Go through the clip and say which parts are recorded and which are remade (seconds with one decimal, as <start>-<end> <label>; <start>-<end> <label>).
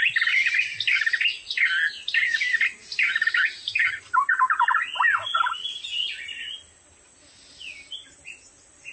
0.0-8.9 recorded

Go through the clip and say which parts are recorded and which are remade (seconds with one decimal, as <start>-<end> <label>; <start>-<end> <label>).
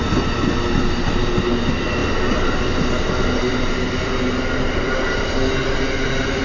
0.0-6.4 recorded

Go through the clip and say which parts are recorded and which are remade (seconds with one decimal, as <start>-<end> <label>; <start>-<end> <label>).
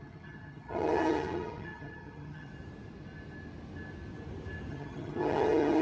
0.0-2.5 remade; 2.5-4.7 recorded; 4.7-5.8 remade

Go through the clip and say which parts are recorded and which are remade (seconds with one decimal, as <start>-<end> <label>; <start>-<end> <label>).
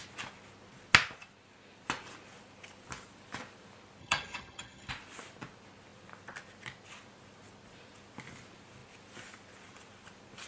0.0-4.0 recorded; 4.0-4.9 remade; 4.9-10.5 recorded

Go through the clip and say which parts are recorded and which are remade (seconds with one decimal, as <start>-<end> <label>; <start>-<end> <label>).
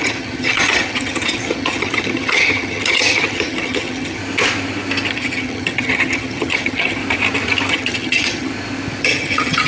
0.0-4.2 remade; 4.2-5.1 recorded; 5.1-7.0 remade; 7.0-7.7 recorded; 7.7-8.5 remade; 8.5-9.0 recorded; 9.0-9.7 remade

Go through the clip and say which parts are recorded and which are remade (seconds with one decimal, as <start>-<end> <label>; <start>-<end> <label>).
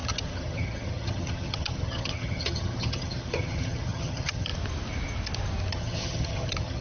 0.0-4.5 remade; 4.5-5.7 recorded; 5.7-6.8 remade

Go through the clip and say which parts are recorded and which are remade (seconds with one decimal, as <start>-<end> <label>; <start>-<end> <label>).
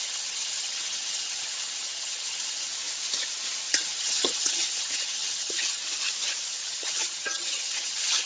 0.0-2.7 remade; 2.7-3.7 recorded; 3.7-5.8 remade; 5.8-6.5 recorded; 6.5-8.3 remade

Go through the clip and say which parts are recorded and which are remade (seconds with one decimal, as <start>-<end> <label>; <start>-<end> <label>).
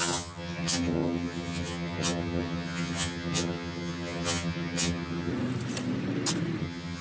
0.0-5.3 remade; 5.3-6.6 recorded; 6.6-7.0 remade